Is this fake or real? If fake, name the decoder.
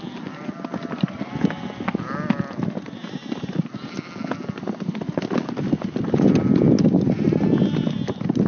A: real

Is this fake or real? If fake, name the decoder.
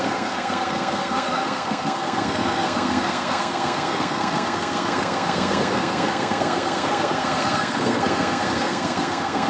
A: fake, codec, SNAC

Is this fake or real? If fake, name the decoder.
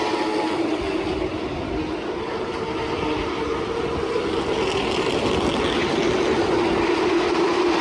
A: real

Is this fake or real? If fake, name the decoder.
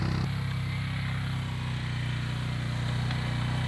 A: real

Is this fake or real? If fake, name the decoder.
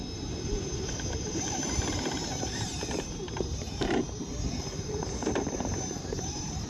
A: fake, vocoder, BigVGAN v2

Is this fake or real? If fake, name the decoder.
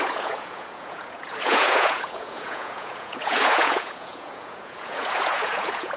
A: fake, vocoder, Vocos